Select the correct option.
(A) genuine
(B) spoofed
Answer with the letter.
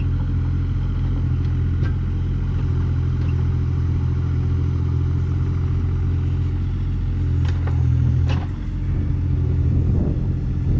A